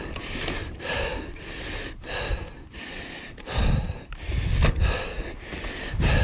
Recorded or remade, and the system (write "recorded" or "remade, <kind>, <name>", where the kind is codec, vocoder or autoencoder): recorded